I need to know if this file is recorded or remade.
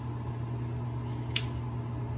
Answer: recorded